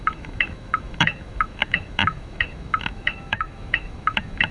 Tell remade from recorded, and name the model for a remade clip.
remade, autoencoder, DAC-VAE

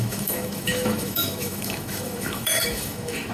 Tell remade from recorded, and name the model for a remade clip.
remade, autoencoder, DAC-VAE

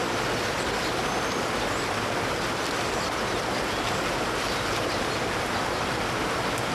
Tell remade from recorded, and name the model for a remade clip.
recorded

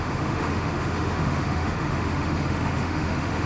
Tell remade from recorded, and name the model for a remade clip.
remade, autoencoder, DAC-VAE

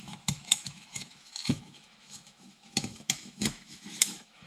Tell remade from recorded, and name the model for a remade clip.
remade, autoencoder, DAC-VAE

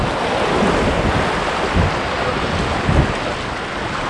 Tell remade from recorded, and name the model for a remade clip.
recorded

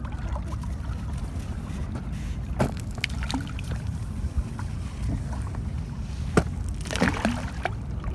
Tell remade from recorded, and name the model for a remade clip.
recorded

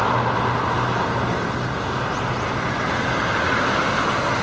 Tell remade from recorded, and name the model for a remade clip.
recorded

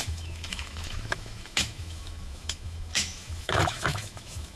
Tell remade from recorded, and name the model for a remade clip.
remade, autoencoder, DAC-VAE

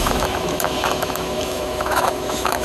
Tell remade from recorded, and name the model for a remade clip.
remade, autoencoder, DAC-VAE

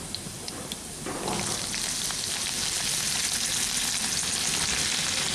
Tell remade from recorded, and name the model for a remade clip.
recorded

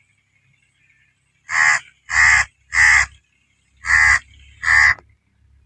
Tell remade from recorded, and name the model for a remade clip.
recorded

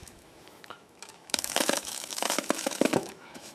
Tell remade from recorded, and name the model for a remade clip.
remade, autoencoder, DAC-VAE